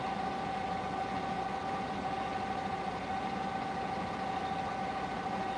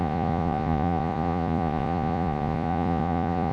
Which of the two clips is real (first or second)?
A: first